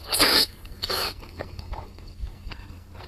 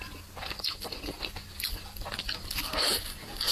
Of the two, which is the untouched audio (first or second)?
second